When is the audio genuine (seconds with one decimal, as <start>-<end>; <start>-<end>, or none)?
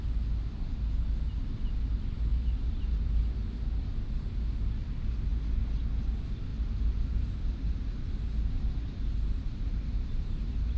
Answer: 0.0-2.3; 3.1-6.5